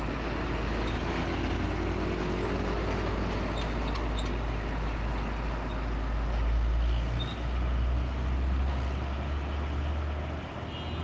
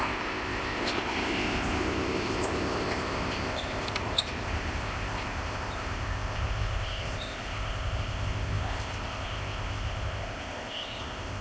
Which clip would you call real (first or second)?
first